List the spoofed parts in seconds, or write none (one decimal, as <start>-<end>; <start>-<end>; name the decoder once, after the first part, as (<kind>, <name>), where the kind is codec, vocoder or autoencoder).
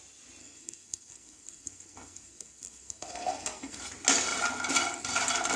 0.4-3.8 (codec, SNAC)